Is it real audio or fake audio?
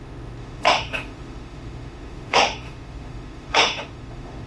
fake